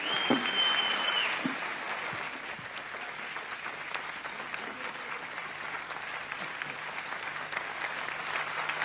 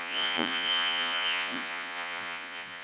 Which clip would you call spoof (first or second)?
second